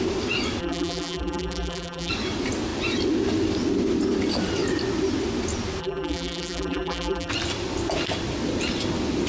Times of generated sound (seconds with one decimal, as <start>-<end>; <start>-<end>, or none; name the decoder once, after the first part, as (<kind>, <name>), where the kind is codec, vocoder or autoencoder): 0.6-2.1 (vocoder, BigVGAN v2); 5.8-7.3